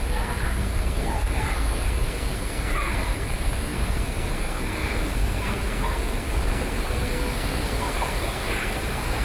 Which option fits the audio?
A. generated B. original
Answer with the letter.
A